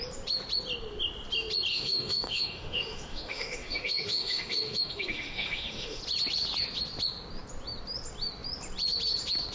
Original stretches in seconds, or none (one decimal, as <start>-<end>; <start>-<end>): 0.0-1.7; 6.0-9.5